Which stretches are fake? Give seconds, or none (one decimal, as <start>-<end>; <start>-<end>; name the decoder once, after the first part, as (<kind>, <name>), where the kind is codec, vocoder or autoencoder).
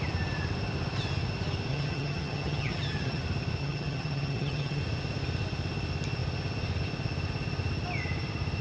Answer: 1.7-3.2 (vocoder, HiFi-GAN); 3.6-4.8